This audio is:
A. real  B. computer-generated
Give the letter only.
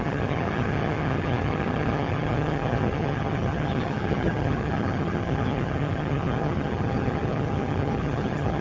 B